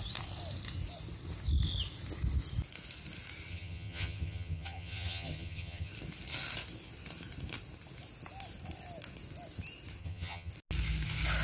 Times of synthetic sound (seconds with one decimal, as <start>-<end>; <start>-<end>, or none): 3.5-5.9; 10.0-10.5